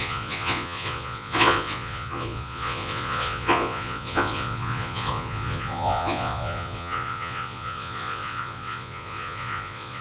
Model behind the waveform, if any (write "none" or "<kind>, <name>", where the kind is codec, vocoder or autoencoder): vocoder, Vocos